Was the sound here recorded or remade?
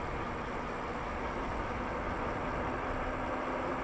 recorded